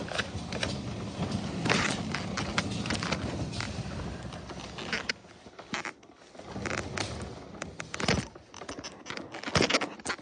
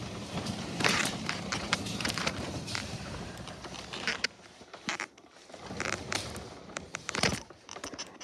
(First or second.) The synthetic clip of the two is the second